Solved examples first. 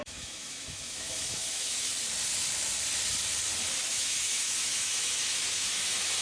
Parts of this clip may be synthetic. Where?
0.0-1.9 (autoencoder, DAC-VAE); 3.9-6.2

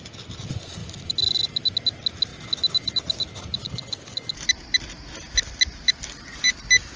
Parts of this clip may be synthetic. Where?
none